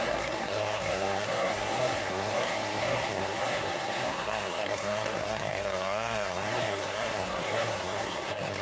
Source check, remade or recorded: remade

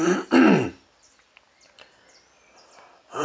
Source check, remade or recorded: recorded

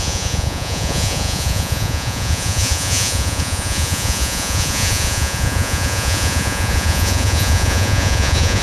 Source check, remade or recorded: remade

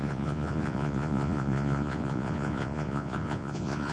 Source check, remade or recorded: remade